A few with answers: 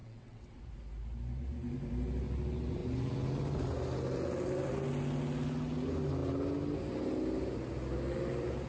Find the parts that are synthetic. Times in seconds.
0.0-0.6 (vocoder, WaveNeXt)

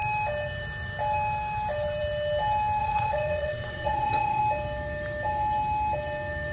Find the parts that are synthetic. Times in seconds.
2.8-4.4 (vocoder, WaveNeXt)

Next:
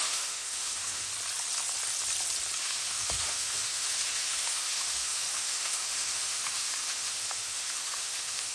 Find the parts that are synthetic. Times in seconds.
0.0-1.1 (autoencoder, DAC-VAE); 2.6-8.5

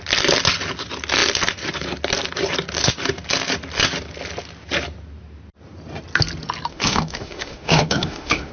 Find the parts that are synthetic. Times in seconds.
6.7-8.5 (autoencoder, DAC-VAE)

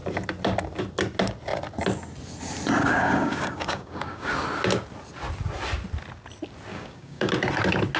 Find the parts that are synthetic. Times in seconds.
2.8-4.3 (codec, DAC); 6.7-7.3